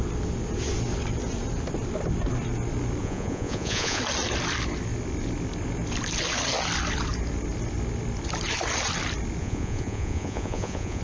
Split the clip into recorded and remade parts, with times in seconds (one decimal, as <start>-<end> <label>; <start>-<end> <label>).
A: 0.0-3.0 recorded; 3.0-4.0 remade; 4.0-9.4 recorded; 9.4-11.0 remade